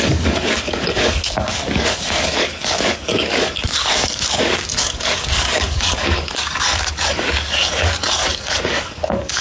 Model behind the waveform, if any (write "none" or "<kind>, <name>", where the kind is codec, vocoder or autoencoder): codec, DAC